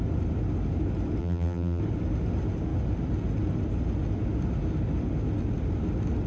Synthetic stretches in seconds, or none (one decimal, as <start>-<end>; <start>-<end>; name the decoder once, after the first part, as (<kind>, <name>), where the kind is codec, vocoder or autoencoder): 1.2-1.8 (vocoder, BigVGAN v2)